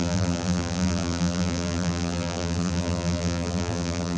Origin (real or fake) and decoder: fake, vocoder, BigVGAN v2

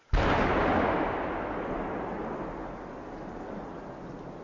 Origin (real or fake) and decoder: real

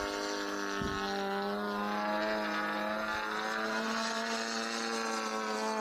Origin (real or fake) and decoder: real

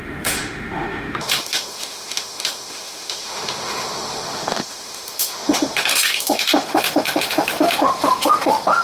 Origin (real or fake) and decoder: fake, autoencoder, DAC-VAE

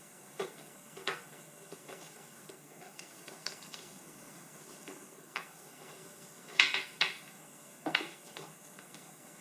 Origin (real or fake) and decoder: fake, codec, SNAC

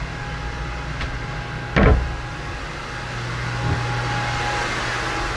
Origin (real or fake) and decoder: real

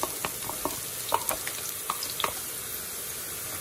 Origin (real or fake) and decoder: real